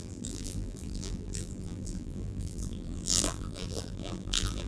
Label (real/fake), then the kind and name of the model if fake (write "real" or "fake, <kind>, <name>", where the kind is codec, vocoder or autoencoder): fake, vocoder, BigVGAN v2